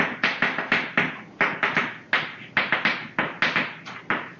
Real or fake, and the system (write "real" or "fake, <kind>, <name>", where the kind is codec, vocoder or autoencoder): real